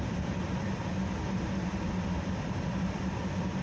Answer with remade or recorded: remade